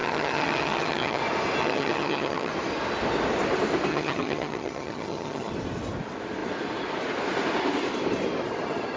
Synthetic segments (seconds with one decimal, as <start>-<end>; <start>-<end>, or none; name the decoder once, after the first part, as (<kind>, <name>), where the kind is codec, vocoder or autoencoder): 0.0-1.2 (vocoder, HiFi-GAN); 1.6-2.5; 3.9-5.5